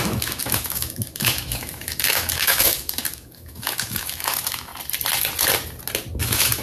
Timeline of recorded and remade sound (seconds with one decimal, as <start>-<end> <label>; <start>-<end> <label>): 0.0-4.7 remade; 4.7-6.1 recorded; 6.1-6.6 remade